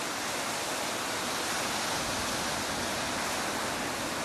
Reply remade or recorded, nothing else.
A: recorded